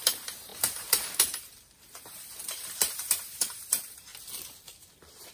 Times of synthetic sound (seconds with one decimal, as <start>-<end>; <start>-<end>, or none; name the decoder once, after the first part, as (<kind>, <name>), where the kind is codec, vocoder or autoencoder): 0.0-4.1 (vocoder, BigVGAN v2); 4.6-5.3